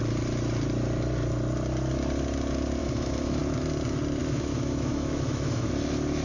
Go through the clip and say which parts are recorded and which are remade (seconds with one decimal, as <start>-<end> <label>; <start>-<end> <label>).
0.0-2.8 recorded; 2.8-3.4 remade; 3.4-4.2 recorded; 4.2-5.7 remade; 5.7-6.2 recorded